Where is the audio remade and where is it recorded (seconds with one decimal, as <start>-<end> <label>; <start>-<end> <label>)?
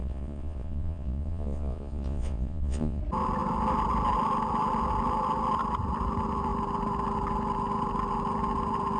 0.0-3.0 remade; 3.0-9.0 recorded